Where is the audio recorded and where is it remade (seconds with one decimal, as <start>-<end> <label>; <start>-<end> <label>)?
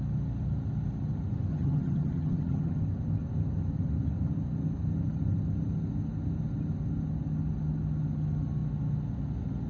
0.0-1.5 recorded; 1.5-2.8 remade; 2.8-9.7 recorded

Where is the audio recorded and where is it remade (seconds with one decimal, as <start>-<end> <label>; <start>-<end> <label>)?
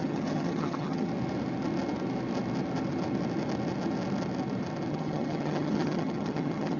0.0-1.1 remade; 1.1-4.9 recorded; 4.9-6.8 remade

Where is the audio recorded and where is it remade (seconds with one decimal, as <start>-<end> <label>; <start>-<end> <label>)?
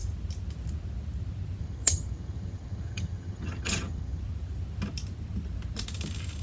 0.0-1.6 recorded; 1.6-4.2 remade; 4.2-6.4 recorded